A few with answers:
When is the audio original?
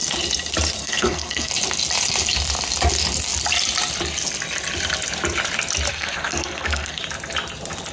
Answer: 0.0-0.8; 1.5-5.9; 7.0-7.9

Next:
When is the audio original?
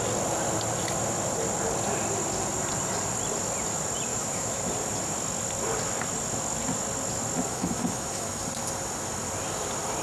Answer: 0.0-4.1; 4.6-7.5; 8.4-10.0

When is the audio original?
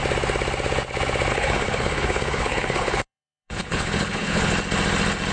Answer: 0.0-1.3; 4.5-5.3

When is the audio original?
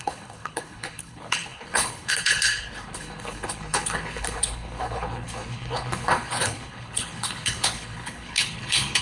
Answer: none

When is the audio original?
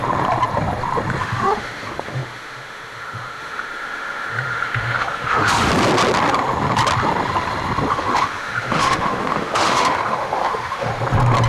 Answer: 0.0-1.2; 5.7-7.9; 10.9-11.5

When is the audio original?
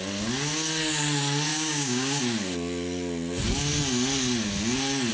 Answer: 0.0-1.5; 2.2-5.1